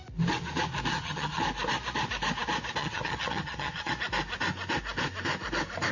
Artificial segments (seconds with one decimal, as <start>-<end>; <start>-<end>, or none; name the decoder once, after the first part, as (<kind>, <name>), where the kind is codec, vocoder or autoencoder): 0.9-1.4 (vocoder, HiFi-GAN); 2.8-3.9